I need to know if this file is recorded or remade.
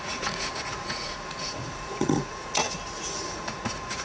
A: remade